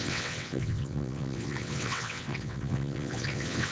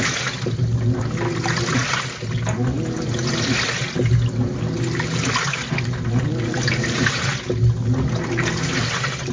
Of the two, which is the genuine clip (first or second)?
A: second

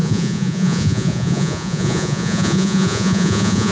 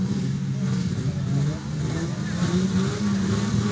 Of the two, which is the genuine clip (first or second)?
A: second